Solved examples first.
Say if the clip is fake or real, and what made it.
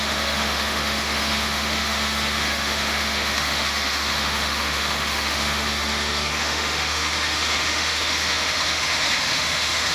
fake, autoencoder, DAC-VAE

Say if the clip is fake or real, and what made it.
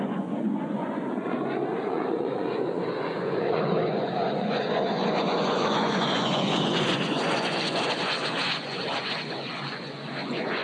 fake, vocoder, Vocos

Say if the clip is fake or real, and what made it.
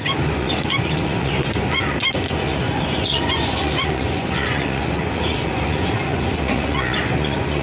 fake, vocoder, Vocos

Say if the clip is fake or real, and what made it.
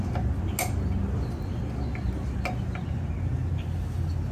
real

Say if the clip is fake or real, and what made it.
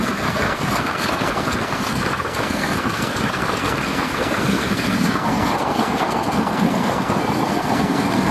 fake, codec, SNAC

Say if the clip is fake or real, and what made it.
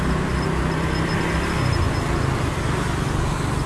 real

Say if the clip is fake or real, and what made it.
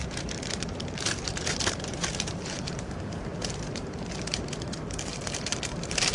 fake, vocoder, BigVGAN v2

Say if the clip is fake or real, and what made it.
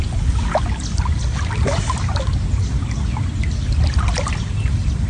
real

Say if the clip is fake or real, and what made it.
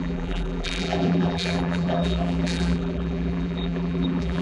fake, vocoder, BigVGAN v2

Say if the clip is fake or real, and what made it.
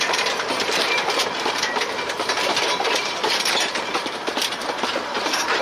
fake, vocoder, BigVGAN v2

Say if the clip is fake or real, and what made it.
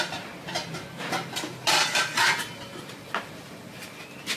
real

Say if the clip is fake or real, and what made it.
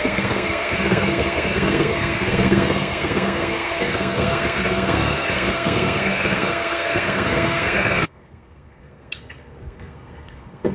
fake, codec, SNAC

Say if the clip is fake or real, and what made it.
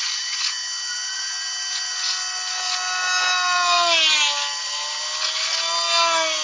real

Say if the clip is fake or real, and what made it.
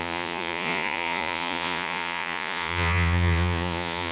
fake, vocoder, Vocos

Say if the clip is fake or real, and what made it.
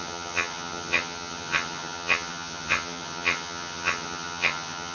fake, vocoder, HiFi-GAN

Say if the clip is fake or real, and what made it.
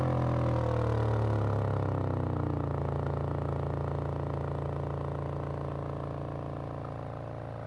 real